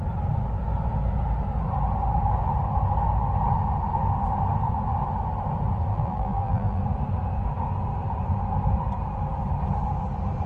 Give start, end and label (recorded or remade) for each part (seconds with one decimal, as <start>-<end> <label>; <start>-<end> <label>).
0.0-5.9 recorded; 5.9-6.8 remade; 6.8-10.5 recorded